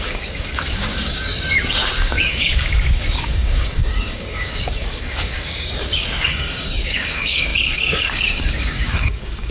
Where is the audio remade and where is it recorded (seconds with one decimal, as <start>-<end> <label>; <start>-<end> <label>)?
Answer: 0.0-9.5 remade